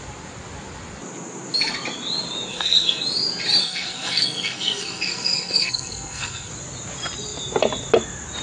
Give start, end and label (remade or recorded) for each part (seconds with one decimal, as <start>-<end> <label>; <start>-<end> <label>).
0.0-2.5 recorded; 2.5-3.0 remade; 3.0-3.6 recorded; 3.6-6.5 remade; 6.5-8.4 recorded